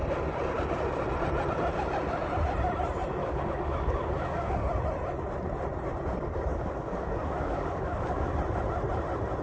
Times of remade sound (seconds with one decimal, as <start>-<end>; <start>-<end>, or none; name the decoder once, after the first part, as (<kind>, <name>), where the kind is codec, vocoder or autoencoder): 3.2-4.7 (codec, DAC); 6.5-8.3